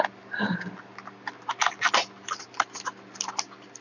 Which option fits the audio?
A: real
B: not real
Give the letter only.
A